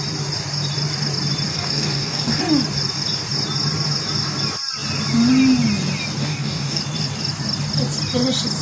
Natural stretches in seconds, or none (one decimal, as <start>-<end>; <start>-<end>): 0.0-1.5; 2.4-6.2; 6.8-8.6